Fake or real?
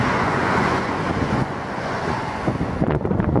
fake